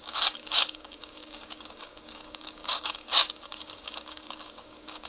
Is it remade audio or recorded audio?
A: remade